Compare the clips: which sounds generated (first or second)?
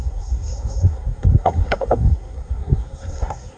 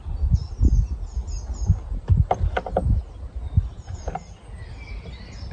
first